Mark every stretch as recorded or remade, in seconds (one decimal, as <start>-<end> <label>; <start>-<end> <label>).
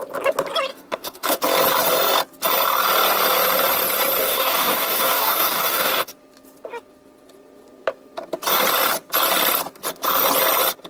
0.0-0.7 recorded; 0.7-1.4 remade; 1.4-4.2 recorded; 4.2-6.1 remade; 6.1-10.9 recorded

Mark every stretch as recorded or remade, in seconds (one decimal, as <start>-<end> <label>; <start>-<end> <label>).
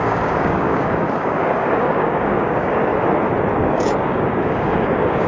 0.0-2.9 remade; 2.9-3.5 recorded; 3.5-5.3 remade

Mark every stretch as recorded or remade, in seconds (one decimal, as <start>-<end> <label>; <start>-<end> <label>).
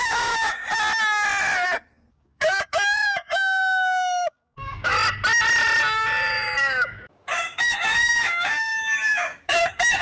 0.0-0.6 remade; 0.6-2.1 recorded; 2.1-4.9 remade; 4.9-6.6 recorded; 6.6-10.0 remade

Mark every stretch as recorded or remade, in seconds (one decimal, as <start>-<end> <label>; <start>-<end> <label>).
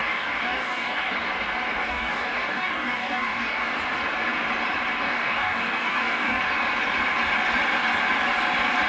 0.0-1.1 remade; 1.1-1.8 recorded; 1.8-3.7 remade; 3.7-5.1 recorded; 5.1-6.4 remade; 6.4-8.9 recorded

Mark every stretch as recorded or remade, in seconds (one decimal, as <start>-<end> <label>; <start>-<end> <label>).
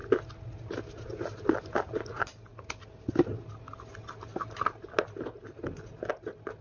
0.0-6.6 recorded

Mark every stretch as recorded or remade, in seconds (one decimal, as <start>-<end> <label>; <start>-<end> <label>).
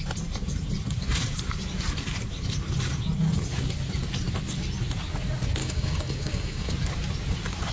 0.0-5.6 recorded; 5.6-6.7 remade; 6.7-7.7 recorded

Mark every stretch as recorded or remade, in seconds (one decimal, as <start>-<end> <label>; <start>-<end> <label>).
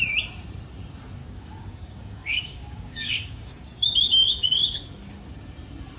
0.0-1.2 recorded; 1.2-4.8 remade; 4.8-6.0 recorded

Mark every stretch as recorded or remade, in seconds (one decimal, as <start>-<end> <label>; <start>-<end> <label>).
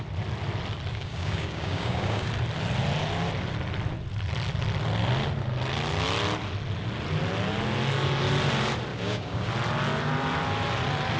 0.0-0.9 recorded; 0.9-2.3 remade; 2.3-8.9 recorded; 8.9-9.5 remade; 9.5-11.2 recorded